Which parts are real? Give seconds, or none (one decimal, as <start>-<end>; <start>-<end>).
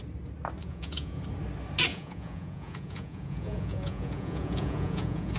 0.0-0.6; 1.2-1.9